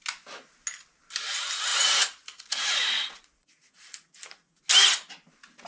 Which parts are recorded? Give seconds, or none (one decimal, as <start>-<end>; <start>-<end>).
0.0-1.7; 4.6-5.7